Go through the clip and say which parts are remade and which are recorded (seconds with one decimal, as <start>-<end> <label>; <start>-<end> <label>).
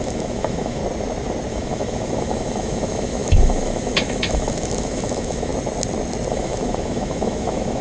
0.0-0.8 remade; 0.8-1.5 recorded; 1.5-5.5 remade; 5.5-6.3 recorded; 6.3-7.8 remade